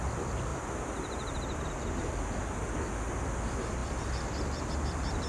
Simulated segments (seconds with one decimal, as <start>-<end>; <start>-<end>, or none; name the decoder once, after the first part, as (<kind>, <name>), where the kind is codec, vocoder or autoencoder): 0.5-2.0 (vocoder, BigVGAN v2); 3.8-4.7